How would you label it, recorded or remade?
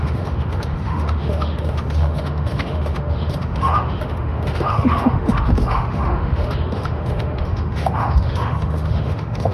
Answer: remade